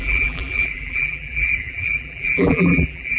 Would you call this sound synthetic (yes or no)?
yes